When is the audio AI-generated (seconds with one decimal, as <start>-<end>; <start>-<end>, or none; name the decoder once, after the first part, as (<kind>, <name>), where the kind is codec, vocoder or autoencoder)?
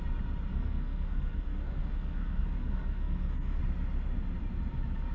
0.5-3.6 (codec, SNAC)